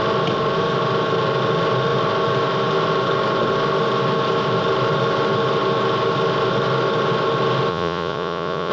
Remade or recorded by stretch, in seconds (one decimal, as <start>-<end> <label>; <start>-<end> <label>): 0.0-7.7 recorded; 7.7-8.7 remade